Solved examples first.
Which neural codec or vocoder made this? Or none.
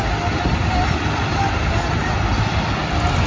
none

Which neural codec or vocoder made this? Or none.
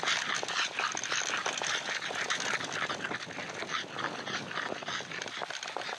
none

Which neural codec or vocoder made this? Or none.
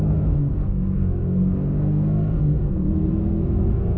codec, SNAC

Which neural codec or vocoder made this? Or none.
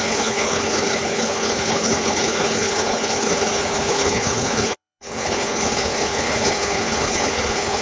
codec, HILCodec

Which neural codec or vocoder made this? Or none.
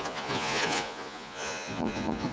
vocoder, Vocos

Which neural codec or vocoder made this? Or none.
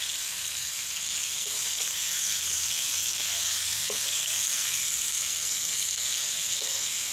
codec, SNAC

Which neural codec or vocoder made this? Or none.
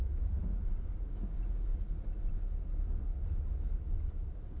none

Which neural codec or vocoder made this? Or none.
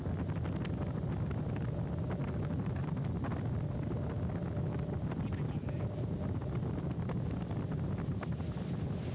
none